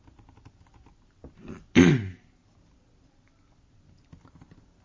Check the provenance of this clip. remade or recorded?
recorded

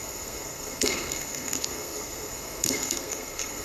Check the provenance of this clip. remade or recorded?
remade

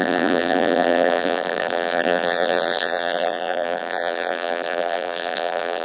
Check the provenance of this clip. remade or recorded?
remade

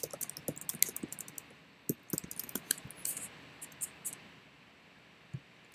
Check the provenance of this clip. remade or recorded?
recorded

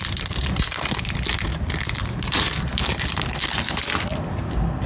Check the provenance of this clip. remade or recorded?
remade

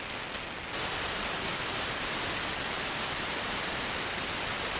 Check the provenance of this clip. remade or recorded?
recorded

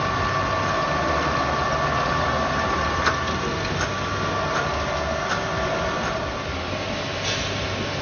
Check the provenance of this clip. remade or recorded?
recorded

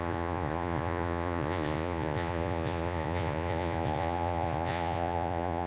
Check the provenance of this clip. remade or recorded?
remade